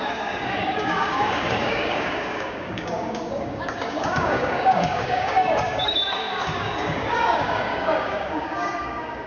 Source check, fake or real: fake